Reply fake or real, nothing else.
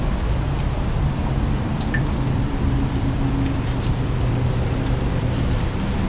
fake